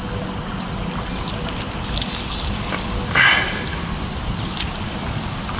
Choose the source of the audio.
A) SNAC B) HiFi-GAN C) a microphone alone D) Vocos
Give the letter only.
C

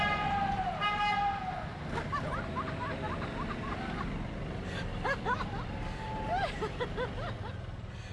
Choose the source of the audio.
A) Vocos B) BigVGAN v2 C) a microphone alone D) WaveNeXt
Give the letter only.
C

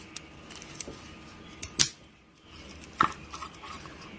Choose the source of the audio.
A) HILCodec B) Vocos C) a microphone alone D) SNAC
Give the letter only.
C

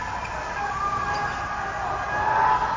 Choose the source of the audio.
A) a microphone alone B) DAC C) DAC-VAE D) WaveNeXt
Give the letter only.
A